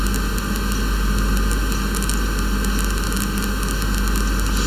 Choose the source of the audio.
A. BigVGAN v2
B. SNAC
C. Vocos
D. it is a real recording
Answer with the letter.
D